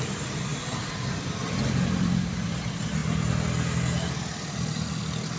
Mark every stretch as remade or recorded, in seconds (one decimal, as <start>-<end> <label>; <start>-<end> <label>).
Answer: 0.0-5.4 recorded